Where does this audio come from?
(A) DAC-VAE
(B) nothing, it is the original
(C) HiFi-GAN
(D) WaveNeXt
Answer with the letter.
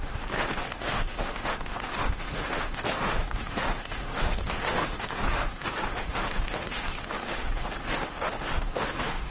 A